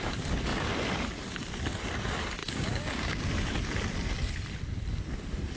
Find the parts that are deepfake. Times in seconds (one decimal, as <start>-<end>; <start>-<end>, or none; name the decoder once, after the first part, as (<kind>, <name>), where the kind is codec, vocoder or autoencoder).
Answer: 2.4-3.2 (codec, DAC)